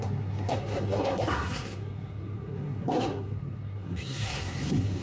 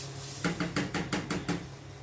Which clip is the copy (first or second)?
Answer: first